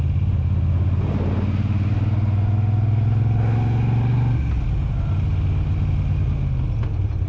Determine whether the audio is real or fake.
real